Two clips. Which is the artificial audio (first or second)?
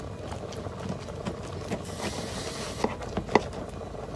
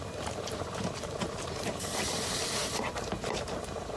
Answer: second